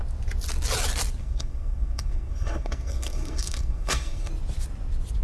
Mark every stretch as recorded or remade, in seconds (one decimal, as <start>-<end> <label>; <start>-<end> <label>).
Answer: 0.0-1.2 recorded; 1.2-4.3 remade; 4.3-5.2 recorded

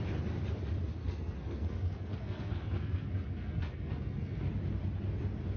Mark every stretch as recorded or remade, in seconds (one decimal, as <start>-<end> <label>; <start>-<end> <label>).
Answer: 0.0-1.0 recorded; 1.0-4.4 remade; 4.4-5.6 recorded

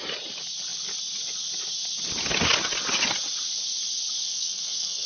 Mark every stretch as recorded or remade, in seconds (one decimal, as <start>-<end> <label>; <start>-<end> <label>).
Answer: 0.0-4.2 recorded; 4.2-5.1 remade

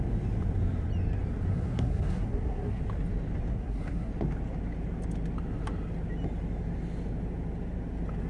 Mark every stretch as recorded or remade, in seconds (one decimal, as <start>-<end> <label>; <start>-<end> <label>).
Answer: 0.0-1.5 recorded; 1.5-2.8 remade; 2.8-3.5 recorded; 3.5-4.1 remade; 4.1-8.3 recorded

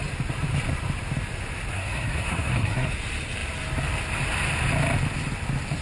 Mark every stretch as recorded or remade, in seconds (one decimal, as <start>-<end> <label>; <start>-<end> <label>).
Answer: 0.0-1.7 recorded; 1.7-2.9 remade; 2.9-5.8 recorded